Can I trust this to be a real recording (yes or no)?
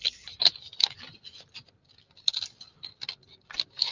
yes